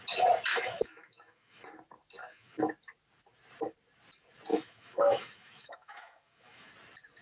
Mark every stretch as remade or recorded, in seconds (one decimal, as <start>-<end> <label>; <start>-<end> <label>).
0.0-0.5 recorded; 0.5-1.6 remade; 1.6-2.2 recorded; 2.2-2.7 remade; 2.7-4.5 recorded; 4.5-6.7 remade; 6.7-7.2 recorded

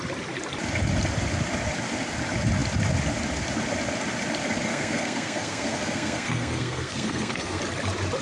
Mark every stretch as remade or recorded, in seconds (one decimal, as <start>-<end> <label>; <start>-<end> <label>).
0.0-4.7 recorded; 4.7-7.6 remade; 7.6-8.2 recorded

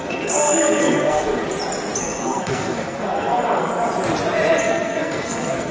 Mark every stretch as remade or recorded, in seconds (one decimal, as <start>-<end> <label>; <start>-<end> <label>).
0.0-1.4 remade; 1.4-2.0 recorded; 2.0-3.7 remade; 3.7-4.6 recorded; 4.6-5.7 remade

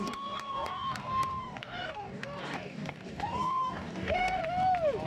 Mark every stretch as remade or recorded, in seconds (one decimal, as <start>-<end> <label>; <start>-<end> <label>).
0.0-4.4 remade; 4.4-5.1 recorded

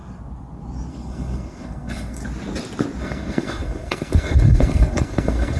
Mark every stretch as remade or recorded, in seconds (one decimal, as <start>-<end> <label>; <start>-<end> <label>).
0.0-0.9 recorded; 0.9-2.2 remade; 2.2-3.0 recorded; 3.0-5.6 remade

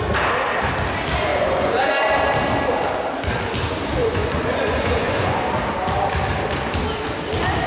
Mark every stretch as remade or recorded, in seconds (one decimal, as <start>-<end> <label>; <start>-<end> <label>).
0.0-1.3 recorded; 1.3-1.9 remade; 1.9-4.0 recorded; 4.0-5.4 remade; 5.4-7.7 recorded